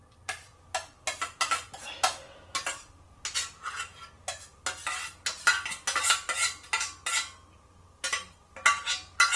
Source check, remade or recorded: recorded